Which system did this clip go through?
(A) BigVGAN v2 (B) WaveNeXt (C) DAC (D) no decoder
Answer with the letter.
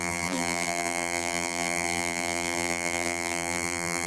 A